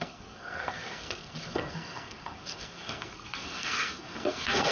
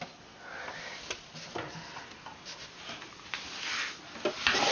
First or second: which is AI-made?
first